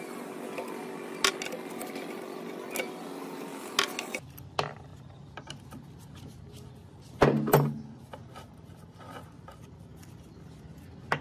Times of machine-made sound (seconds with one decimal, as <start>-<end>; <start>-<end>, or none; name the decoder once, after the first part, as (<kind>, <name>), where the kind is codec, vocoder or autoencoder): none